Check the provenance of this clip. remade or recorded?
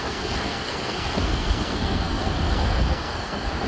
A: remade